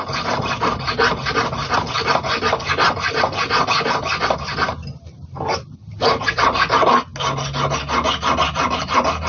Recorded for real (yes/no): yes